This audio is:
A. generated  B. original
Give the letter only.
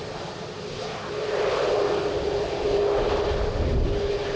B